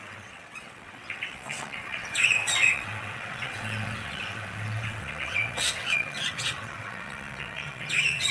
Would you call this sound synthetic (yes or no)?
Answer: yes